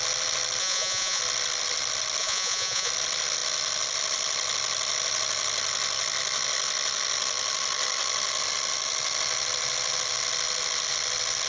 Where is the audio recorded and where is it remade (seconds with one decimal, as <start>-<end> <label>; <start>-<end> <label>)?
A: 0.0-0.6 recorded; 0.6-1.2 remade; 1.2-2.2 recorded; 2.2-2.9 remade; 2.9-11.5 recorded